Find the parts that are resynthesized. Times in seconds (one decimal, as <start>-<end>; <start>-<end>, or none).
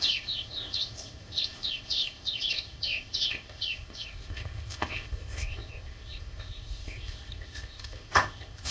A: 0.0-8.7